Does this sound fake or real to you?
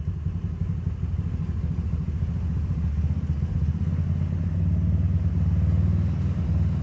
real